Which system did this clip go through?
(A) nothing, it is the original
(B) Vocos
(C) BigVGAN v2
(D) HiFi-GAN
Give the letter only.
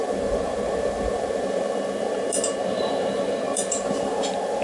C